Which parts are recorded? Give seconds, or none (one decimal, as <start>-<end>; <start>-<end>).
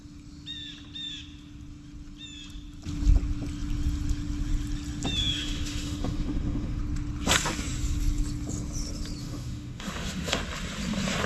0.0-5.2; 6.8-9.2; 10.4-11.3